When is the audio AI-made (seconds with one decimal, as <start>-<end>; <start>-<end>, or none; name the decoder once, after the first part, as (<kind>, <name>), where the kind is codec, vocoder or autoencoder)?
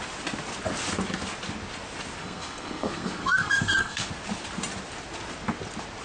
2.2-4.1 (codec, SNAC)